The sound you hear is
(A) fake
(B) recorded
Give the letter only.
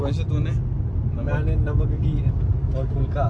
B